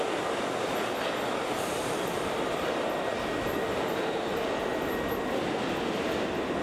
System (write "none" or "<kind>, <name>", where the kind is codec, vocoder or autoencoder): none